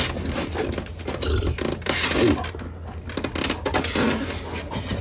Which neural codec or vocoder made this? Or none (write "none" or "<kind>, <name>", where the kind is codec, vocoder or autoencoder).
none